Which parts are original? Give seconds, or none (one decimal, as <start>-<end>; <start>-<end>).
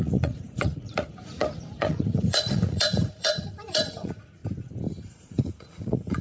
4.4-5.2